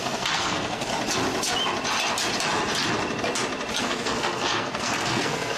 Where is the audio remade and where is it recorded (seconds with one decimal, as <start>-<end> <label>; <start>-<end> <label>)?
0.0-0.9 remade; 0.9-3.8 recorded; 3.8-5.6 remade